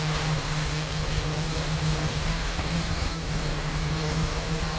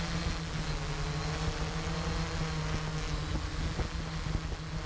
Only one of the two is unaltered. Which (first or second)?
second